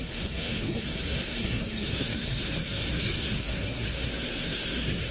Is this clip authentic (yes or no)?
no